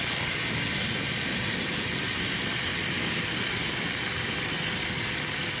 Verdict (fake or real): real